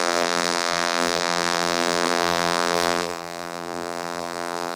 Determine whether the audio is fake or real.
fake